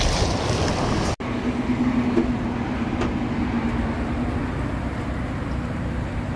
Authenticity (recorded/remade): recorded